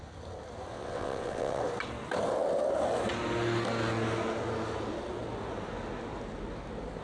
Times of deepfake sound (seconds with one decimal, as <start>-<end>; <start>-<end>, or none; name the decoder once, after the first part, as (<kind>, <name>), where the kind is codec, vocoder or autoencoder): 0.7-1.6 (vocoder, WaveNeXt)